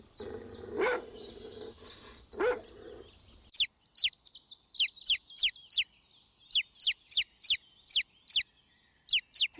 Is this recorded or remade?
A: recorded